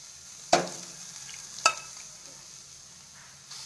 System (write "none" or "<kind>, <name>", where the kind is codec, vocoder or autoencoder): none